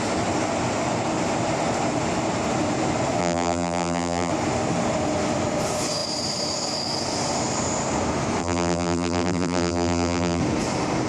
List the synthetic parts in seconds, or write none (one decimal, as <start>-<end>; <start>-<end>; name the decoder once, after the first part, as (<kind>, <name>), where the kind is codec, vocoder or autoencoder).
3.2-4.3 (vocoder, BigVGAN v2); 8.4-10.4